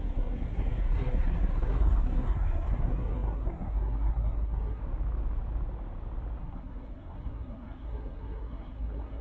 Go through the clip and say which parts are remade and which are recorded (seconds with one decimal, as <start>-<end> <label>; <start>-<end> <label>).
0.0-4.8 remade; 4.8-6.4 recorded; 6.4-9.2 remade